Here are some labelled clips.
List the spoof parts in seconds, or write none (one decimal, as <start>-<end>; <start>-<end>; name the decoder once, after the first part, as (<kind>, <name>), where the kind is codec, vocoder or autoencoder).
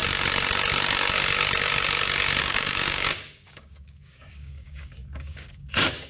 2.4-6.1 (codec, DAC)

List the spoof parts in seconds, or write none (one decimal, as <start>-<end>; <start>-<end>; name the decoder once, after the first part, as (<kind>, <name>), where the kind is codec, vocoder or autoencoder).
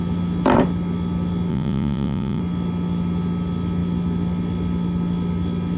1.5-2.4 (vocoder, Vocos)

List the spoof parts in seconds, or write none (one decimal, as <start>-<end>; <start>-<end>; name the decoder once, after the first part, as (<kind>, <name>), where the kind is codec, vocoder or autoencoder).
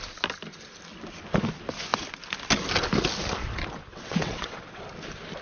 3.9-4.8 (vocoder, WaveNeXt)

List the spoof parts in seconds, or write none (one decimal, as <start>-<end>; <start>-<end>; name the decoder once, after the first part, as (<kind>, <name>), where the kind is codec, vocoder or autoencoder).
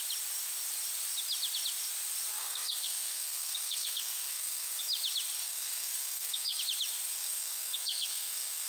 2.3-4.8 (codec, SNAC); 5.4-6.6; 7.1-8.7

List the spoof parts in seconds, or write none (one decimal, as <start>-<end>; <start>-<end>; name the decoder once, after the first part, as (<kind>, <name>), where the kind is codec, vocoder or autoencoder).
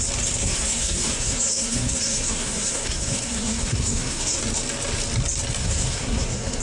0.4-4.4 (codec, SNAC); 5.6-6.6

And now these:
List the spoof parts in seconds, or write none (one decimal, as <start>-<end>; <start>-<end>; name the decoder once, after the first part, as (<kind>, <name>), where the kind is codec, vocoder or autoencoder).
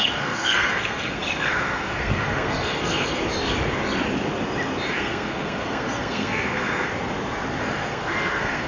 0.0-3.2 (codec, SNAC); 4.9-6.9; 7.6-8.7